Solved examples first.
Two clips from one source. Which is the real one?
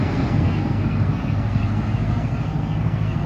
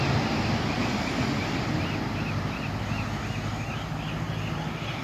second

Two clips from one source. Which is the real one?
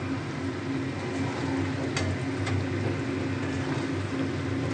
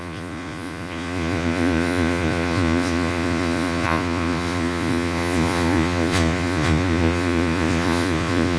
first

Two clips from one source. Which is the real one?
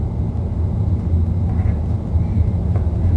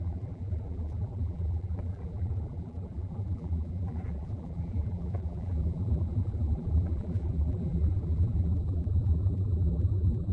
first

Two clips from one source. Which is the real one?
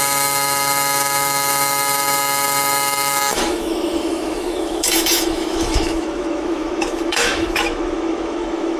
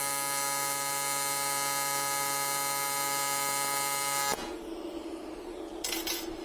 second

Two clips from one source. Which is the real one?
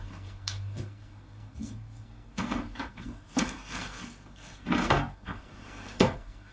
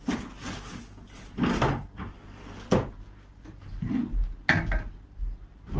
second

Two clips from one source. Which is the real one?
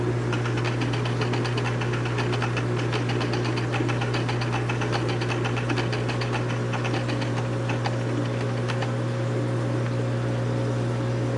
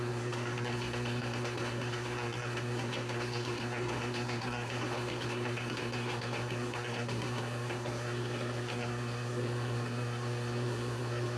first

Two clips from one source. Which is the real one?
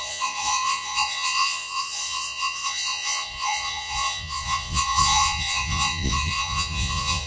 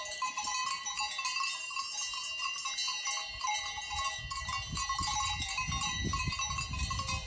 second